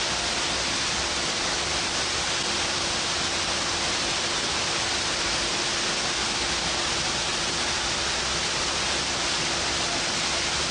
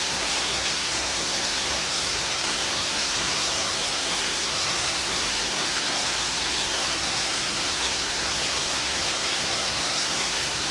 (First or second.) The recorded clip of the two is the first